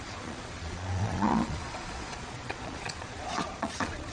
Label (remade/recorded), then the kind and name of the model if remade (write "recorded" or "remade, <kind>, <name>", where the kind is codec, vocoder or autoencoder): remade, vocoder, Vocos